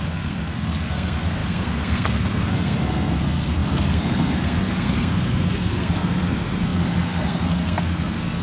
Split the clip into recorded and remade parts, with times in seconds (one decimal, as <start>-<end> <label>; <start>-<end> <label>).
0.0-8.4 remade